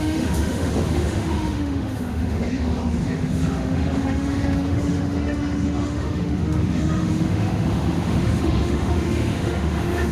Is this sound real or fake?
fake